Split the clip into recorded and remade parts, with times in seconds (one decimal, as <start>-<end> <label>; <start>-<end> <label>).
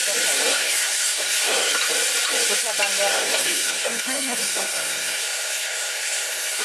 0.0-0.5 recorded; 0.5-1.7 remade; 1.7-3.1 recorded; 3.1-6.6 remade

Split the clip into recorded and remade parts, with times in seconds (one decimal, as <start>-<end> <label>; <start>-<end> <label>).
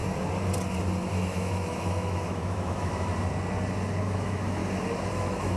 0.0-1.1 recorded; 1.1-3.1 remade; 3.1-4.0 recorded; 4.0-4.6 remade; 4.6-5.1 recorded; 5.1-5.6 remade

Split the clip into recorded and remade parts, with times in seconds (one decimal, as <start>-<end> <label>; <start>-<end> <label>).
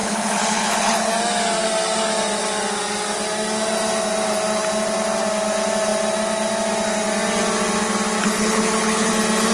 0.0-1.1 remade; 1.1-8.2 recorded; 8.2-9.1 remade; 9.1-9.5 recorded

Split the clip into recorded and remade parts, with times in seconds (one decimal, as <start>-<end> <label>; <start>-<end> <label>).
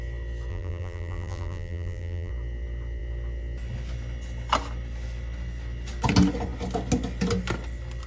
0.0-0.5 recorded; 0.5-2.3 remade; 2.3-8.1 recorded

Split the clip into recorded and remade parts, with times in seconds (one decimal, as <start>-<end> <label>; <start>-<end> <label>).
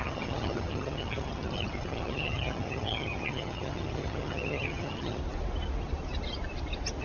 0.0-5.2 remade; 5.2-7.0 recorded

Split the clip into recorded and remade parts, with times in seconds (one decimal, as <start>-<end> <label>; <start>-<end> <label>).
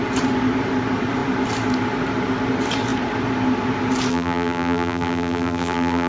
0.0-4.1 recorded; 4.1-6.1 remade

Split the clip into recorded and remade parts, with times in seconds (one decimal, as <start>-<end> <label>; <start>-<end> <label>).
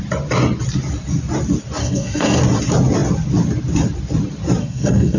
0.0-1.8 recorded; 1.8-2.4 remade; 2.4-4.6 recorded; 4.6-5.2 remade